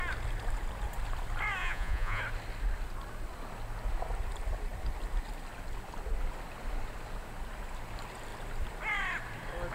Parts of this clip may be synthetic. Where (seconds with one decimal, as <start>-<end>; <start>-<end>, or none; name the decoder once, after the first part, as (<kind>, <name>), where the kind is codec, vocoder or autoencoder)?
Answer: 1.6-2.2 (vocoder, Vocos)

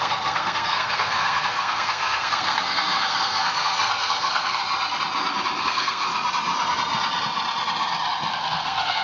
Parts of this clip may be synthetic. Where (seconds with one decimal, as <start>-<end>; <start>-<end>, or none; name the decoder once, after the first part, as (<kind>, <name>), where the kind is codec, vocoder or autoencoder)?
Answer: 0.0-4.6 (codec, SNAC); 5.6-6.1; 8.3-9.0

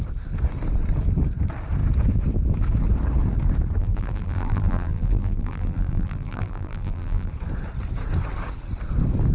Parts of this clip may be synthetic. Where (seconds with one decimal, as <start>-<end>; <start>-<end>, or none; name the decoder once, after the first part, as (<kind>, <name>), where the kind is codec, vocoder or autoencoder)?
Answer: 3.8-7.3 (vocoder, BigVGAN v2)

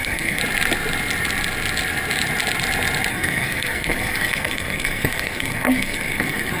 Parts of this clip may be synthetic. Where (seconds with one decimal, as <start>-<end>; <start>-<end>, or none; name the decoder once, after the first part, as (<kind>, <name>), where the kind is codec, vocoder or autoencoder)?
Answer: 0.0-0.4 (codec, SNAC); 3.1-6.6